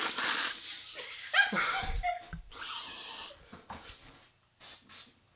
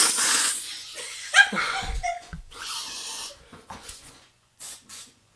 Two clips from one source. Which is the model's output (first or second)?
second